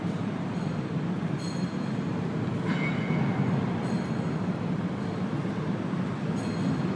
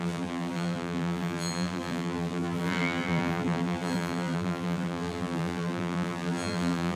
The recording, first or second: first